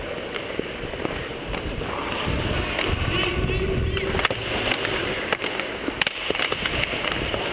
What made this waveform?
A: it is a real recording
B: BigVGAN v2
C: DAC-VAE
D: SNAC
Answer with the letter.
A